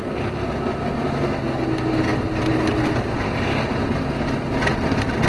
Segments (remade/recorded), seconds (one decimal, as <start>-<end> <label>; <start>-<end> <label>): 0.0-5.3 recorded